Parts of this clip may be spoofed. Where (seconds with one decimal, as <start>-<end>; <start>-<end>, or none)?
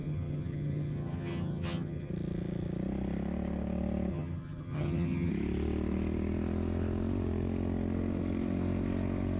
0.0-2.1; 4.1-5.3